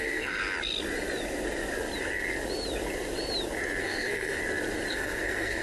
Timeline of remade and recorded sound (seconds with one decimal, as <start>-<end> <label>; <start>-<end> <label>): 0.0-0.4 remade; 0.4-3.8 recorded; 3.8-4.4 remade; 4.4-4.9 recorded; 4.9-5.6 remade